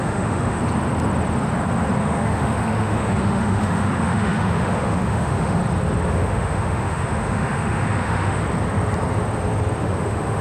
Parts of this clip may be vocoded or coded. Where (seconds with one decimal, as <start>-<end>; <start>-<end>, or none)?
0.0-0.6; 2.0-5.6; 6.1-8.4; 9.8-10.4